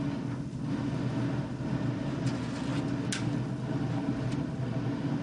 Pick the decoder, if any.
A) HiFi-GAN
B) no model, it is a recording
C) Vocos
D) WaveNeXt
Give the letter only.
B